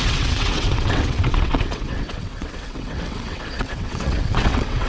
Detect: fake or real fake